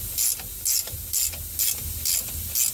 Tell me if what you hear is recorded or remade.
recorded